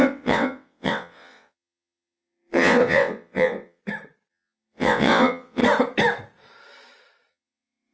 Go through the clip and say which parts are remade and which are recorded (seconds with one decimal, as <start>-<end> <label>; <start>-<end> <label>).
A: 0.0-3.8 remade; 3.8-4.3 recorded; 4.3-5.6 remade; 5.6-7.3 recorded; 7.3-7.9 remade